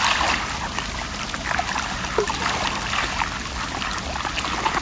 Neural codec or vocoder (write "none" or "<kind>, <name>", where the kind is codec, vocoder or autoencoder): none